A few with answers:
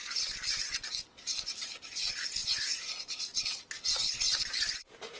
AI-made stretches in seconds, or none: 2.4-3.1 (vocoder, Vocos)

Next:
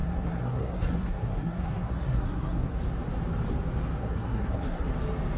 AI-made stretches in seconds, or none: 0.0-2.8 (codec, SNAC); 4.0-4.9

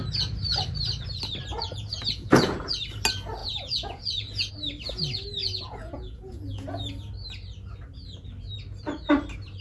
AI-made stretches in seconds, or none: 1.5-2.7 (vocoder, Vocos); 3.4-4.5; 5.4-6.9